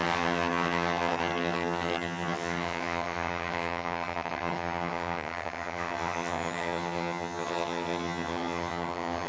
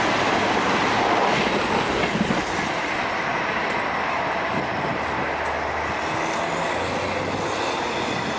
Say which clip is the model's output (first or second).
first